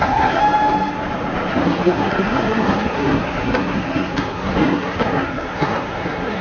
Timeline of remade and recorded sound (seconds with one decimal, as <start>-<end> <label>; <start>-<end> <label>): 0.0-0.4 remade; 0.4-1.5 recorded; 1.5-6.4 remade